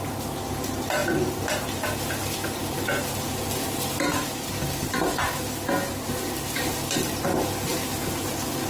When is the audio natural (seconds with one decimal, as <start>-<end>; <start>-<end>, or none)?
0.0-8.7